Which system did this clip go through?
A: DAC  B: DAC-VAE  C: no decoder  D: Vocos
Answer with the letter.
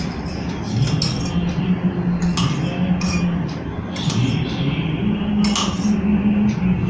C